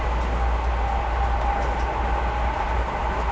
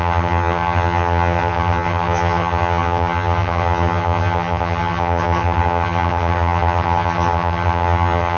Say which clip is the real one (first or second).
first